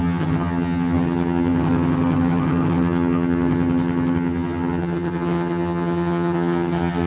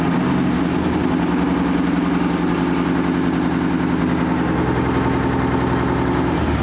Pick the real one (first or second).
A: second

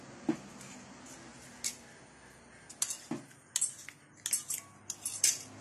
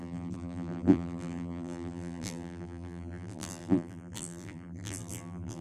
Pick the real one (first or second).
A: first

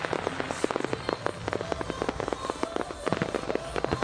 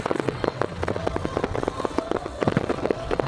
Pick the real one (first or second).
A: first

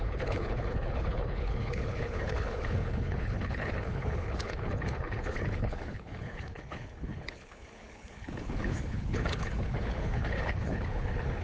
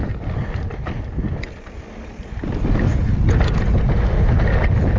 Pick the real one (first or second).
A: second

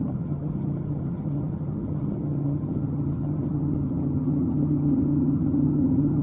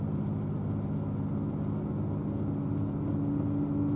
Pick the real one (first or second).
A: second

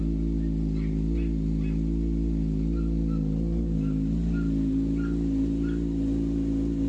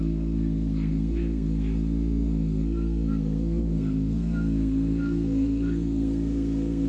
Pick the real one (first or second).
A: first